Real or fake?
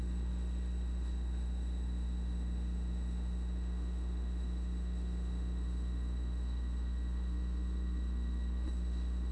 fake